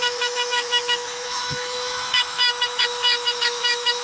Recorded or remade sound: remade